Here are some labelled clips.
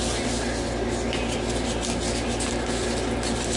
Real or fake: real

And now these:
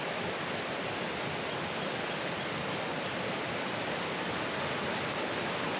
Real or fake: real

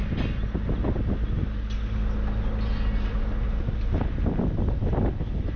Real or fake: real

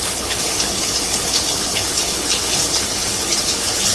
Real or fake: fake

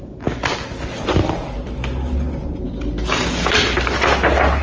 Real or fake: real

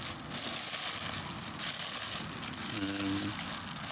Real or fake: real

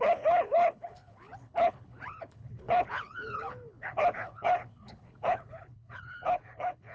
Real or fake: fake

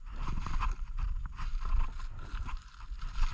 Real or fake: real